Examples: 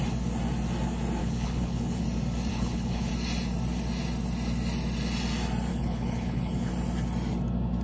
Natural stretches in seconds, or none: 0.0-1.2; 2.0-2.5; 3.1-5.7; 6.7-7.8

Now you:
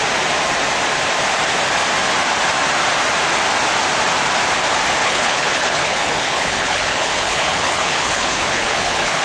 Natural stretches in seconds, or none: 0.0-5.0

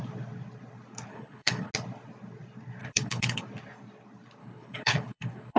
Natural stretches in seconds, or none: 0.0-1.1; 1.7-2.8; 3.4-4.4

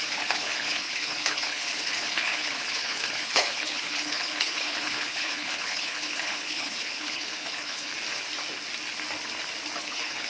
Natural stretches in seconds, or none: 7.9-9.8

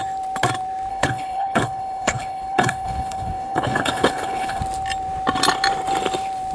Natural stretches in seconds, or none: 0.0-0.9; 4.6-6.5

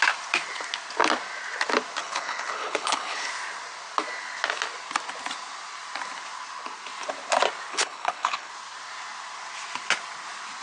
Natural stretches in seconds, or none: 0.0-2.0; 3.3-7.7; 8.5-10.6